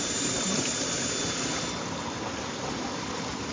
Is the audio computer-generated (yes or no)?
no